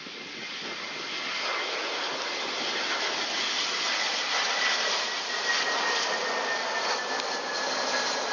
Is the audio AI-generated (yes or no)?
no